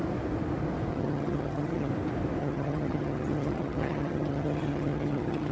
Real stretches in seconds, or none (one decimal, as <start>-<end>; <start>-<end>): 0.0-0.9; 1.9-2.4